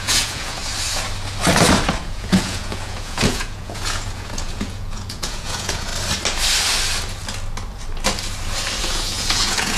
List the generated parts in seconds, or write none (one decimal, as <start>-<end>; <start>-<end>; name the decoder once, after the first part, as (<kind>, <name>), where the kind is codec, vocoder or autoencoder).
0.0-0.6 (vocoder, Vocos); 2.0-5.9; 8.8-9.8